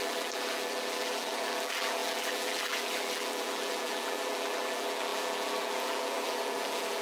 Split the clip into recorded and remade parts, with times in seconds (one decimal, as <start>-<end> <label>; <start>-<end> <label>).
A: 0.0-7.0 remade